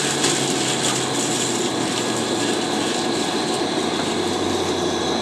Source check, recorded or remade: recorded